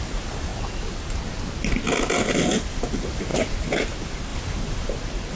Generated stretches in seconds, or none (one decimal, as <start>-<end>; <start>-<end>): 0.0-0.5; 3.7-5.4